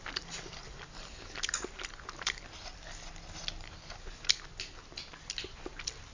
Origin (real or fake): real